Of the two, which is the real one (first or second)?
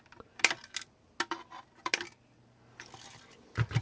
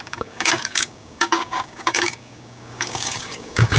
first